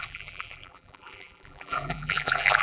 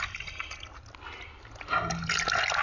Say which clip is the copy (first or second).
first